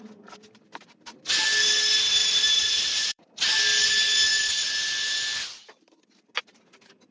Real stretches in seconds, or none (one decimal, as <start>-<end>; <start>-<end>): 0.0-2.2; 3.2-7.1